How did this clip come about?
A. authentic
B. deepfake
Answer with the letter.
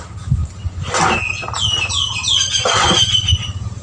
A